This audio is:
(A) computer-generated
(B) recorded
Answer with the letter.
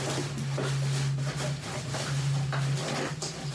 B